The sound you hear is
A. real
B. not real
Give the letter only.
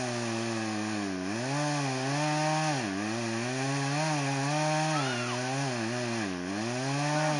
A